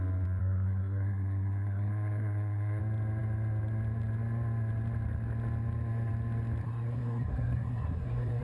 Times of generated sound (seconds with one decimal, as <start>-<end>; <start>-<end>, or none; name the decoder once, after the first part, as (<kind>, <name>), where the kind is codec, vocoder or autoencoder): 0.4-2.8 (codec, SNAC); 6.6-8.4